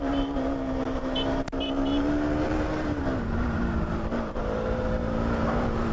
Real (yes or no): no